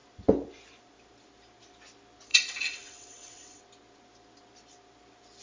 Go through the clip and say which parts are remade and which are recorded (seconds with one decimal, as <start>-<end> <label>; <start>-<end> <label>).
0.0-2.3 recorded; 2.3-3.6 remade; 3.6-5.4 recorded